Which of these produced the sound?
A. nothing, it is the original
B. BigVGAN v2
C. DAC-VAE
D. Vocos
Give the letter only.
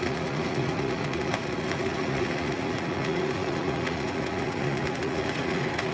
D